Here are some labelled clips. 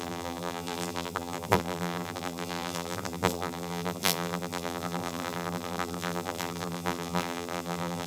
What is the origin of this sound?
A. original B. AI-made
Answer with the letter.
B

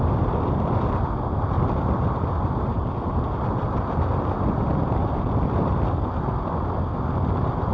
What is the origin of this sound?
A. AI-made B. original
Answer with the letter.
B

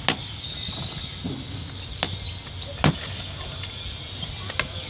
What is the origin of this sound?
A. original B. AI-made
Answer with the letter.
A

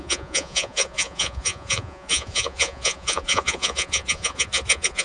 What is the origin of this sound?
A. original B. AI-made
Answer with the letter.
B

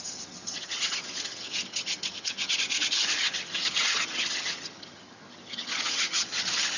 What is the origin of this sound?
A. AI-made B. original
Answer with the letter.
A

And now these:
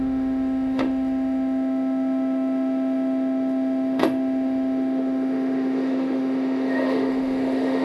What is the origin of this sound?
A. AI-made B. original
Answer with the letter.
A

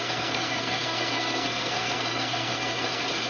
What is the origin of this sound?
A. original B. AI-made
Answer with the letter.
B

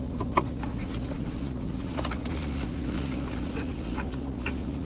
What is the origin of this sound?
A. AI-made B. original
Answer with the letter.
A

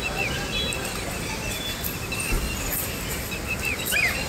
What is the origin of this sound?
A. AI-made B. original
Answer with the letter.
B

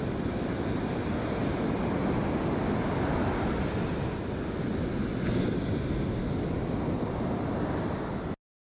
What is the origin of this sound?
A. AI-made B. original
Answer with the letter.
B